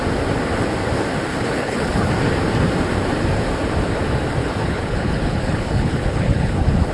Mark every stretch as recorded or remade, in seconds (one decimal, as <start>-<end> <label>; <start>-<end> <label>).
0.0-1.3 recorded; 1.3-2.1 remade; 2.1-4.4 recorded; 4.4-6.9 remade